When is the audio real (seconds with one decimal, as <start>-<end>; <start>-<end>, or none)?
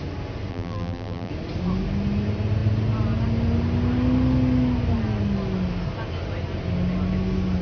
0.0-0.5; 1.3-7.6